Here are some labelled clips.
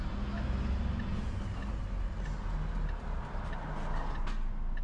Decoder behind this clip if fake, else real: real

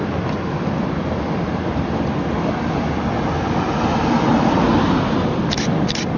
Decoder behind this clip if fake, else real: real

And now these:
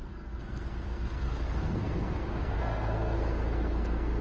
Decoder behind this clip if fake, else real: fake, codec, SNAC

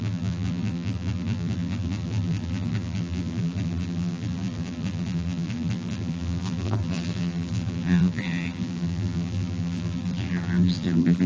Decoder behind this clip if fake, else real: fake, vocoder, BigVGAN v2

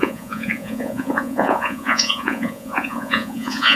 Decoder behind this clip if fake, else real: fake, vocoder, Vocos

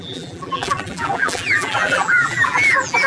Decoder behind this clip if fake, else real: fake, vocoder, BigVGAN v2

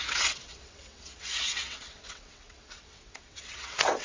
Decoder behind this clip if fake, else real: fake, vocoder, WaveNeXt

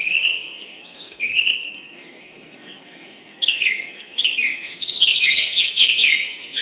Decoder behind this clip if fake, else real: fake, codec, SNAC